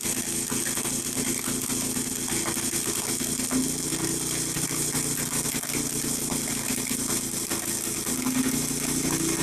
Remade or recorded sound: recorded